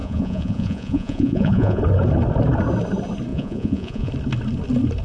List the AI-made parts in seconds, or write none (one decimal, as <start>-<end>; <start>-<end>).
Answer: 0.0-1.8; 3.3-4.1